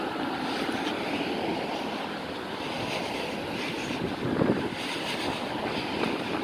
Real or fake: real